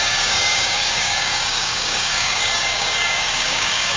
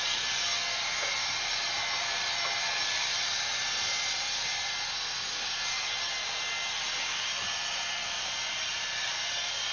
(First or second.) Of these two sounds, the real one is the second